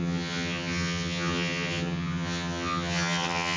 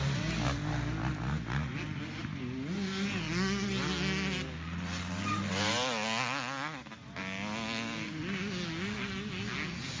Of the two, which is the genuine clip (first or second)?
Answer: second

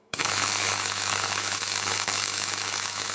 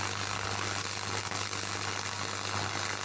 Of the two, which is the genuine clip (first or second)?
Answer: second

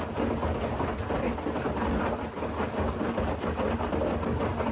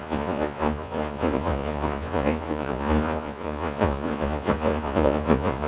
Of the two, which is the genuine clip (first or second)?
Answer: first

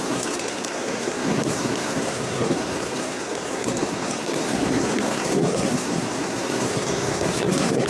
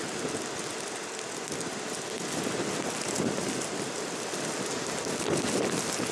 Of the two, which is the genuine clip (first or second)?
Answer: second